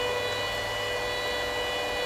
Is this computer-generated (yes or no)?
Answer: no